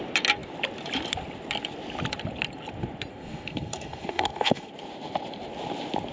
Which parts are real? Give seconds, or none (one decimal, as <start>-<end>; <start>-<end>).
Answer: 0.0-3.1; 4.7-6.1